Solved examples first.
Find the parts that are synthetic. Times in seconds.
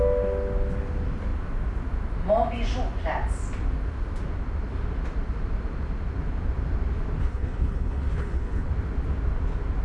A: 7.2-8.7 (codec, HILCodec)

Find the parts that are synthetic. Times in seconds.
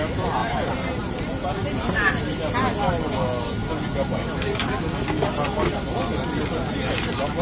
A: 0.4-2.1 (vocoder, BigVGAN v2)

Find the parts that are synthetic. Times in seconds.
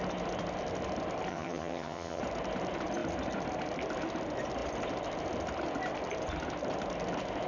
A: 1.3-2.2 (vocoder, HiFi-GAN)